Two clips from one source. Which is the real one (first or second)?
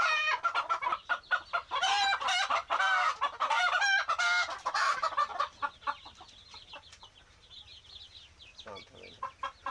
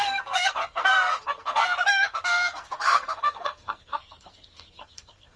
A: first